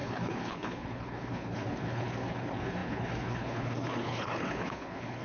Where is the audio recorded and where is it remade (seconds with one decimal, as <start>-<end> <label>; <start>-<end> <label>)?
0.0-5.2 remade